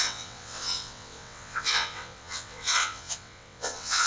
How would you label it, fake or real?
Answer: fake